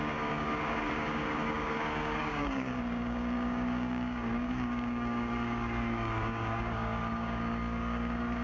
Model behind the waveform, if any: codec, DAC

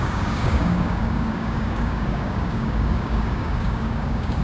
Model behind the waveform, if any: codec, DAC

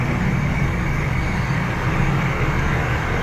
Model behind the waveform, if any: codec, DAC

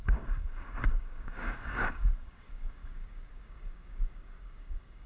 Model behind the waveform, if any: codec, DAC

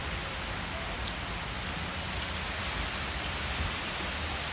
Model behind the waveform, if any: none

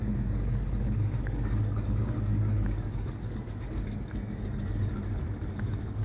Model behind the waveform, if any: codec, DAC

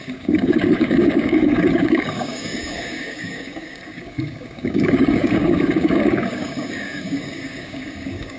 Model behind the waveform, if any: codec, DAC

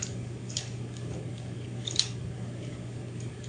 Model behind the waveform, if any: codec, DAC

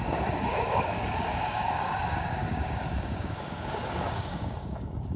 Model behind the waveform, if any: codec, DAC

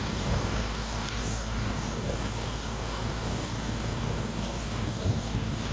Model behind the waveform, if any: codec, DAC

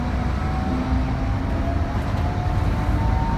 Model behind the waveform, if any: none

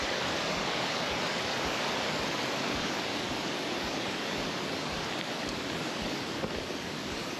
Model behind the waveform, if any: codec, DAC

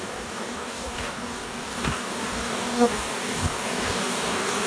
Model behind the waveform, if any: codec, DAC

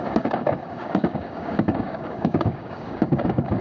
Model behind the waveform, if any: codec, DAC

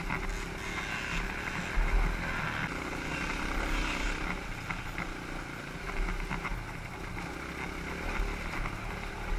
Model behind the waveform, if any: none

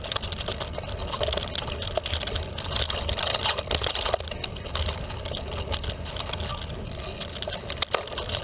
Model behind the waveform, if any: none